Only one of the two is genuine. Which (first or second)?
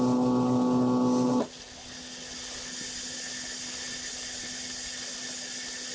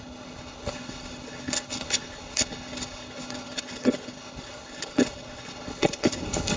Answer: first